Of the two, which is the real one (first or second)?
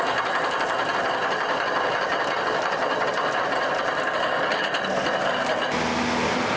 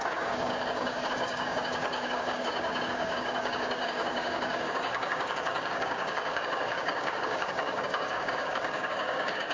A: first